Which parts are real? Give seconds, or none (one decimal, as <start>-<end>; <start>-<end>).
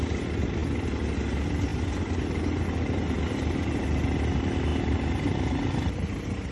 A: 0.0-6.5